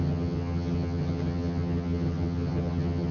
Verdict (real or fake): fake